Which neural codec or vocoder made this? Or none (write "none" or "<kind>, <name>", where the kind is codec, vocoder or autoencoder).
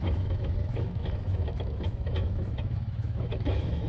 autoencoder, DAC-VAE